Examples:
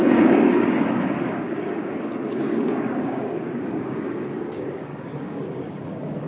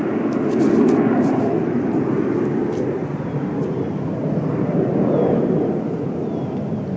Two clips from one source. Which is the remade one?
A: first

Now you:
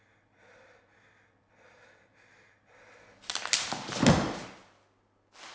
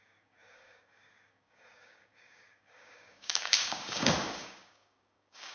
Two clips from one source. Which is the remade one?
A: second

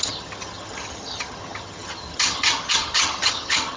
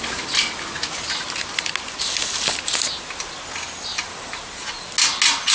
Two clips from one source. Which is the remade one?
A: first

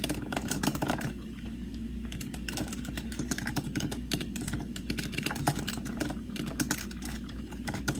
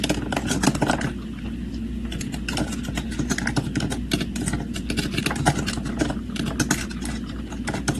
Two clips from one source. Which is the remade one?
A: first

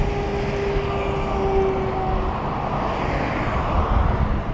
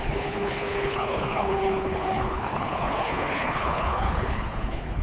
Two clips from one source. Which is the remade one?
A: second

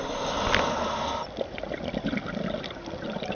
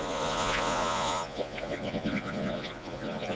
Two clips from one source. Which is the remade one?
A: second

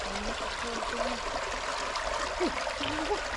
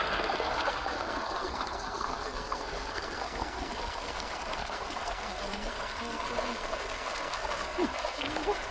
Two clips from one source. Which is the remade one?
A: second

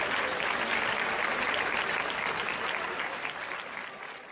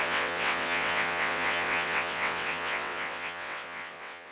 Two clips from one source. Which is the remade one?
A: second